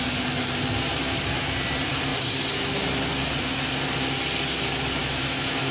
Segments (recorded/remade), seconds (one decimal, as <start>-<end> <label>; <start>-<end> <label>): 0.0-5.0 recorded; 5.0-5.7 remade